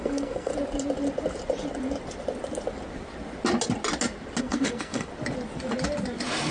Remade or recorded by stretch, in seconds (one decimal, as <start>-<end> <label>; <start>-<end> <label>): 0.0-0.5 remade; 0.5-4.4 recorded; 4.4-5.1 remade; 5.1-6.5 recorded